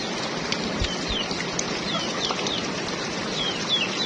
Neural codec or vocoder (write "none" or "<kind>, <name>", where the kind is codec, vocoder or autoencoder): none